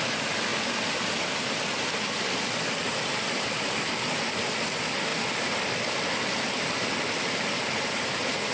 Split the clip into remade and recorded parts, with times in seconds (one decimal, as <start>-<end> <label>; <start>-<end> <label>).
0.0-8.5 recorded